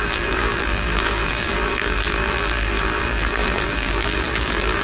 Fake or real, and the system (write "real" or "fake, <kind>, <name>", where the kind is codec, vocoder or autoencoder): fake, vocoder, BigVGAN v2